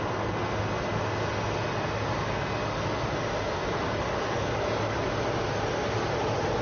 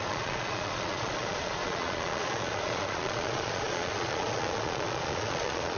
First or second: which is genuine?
first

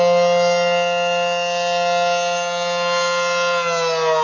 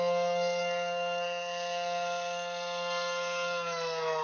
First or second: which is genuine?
first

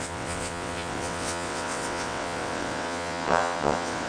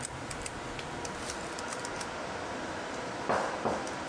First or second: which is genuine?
second